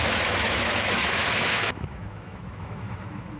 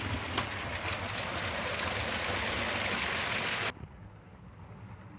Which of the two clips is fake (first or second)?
first